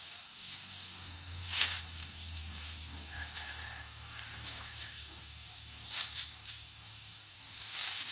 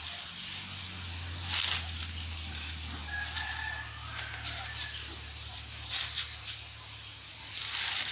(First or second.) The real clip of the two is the second